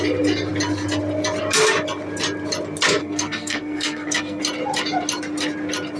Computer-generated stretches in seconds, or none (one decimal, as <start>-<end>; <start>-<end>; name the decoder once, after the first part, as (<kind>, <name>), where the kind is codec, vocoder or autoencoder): 3.0-4.4 (codec, SNAC)